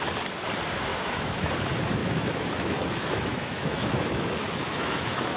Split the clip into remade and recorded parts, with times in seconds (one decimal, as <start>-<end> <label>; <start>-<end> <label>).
0.0-0.9 recorded; 0.9-1.5 remade; 1.5-2.0 recorded; 2.0-5.4 remade